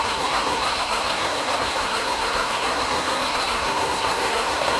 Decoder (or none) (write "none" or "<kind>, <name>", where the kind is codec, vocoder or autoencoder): codec, SNAC